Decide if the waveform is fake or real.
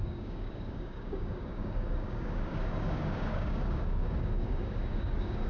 fake